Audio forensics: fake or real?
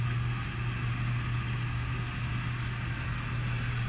real